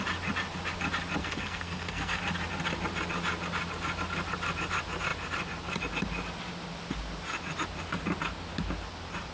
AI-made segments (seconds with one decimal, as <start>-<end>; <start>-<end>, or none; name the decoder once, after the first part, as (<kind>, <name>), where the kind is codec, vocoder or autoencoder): 1.2-2.2 (codec, SNAC)